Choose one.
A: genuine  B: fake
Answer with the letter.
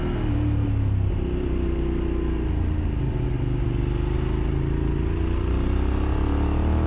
A